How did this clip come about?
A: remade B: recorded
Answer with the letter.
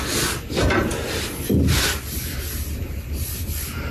B